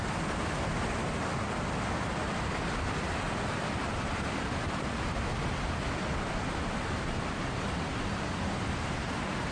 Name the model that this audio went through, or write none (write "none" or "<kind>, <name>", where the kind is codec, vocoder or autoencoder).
none